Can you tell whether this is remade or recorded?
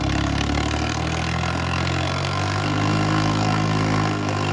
remade